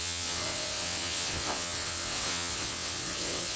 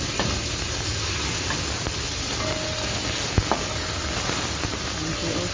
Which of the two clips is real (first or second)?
second